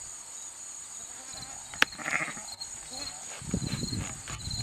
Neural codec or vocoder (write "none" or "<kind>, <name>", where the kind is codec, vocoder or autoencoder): none